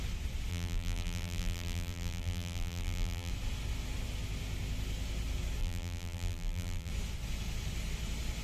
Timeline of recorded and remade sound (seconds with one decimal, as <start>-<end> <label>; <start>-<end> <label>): 0.0-0.5 recorded; 0.5-3.3 remade; 3.3-5.6 recorded; 5.6-6.9 remade; 6.9-8.4 recorded